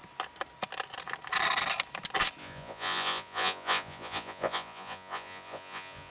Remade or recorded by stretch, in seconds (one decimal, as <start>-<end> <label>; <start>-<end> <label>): 0.0-2.4 recorded; 2.4-6.1 remade